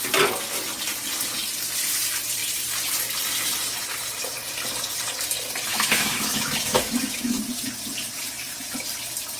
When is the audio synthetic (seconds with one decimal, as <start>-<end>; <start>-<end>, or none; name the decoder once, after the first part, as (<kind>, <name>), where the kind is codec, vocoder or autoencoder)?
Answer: 5.7-7.4 (autoencoder, DAC-VAE)